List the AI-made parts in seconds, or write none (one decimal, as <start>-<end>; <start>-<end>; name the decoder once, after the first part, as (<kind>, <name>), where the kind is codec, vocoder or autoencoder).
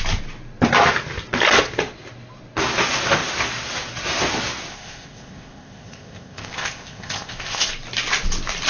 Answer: 4.7-7.7 (codec, ZipCodec)